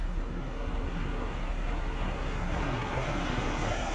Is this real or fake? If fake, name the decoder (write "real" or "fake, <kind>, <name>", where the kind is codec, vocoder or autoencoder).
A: fake, codec, SNAC